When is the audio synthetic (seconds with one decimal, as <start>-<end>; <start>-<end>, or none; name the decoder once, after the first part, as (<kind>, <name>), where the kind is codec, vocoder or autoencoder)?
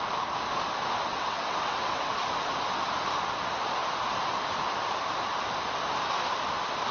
1.1-2.1 (vocoder, WaveNeXt)